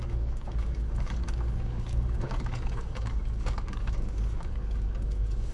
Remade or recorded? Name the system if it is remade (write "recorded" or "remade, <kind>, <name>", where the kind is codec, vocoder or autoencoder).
remade, codec, DAC